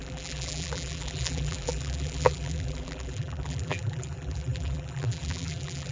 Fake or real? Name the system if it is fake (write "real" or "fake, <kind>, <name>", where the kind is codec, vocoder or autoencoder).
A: fake, vocoder, BigVGAN v2